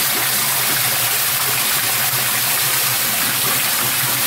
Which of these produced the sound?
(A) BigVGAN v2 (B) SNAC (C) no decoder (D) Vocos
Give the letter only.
C